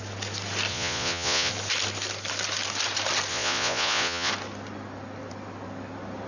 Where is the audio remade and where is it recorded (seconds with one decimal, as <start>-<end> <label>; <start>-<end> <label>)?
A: 0.0-0.7 recorded; 0.7-1.5 remade; 1.5-3.3 recorded; 3.3-4.3 remade; 4.3-6.3 recorded